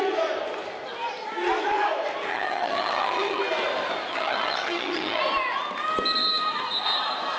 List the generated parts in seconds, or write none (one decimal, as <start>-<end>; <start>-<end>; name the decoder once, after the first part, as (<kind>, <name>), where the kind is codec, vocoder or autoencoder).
2.3-3.4 (vocoder, HiFi-GAN); 4.1-5.2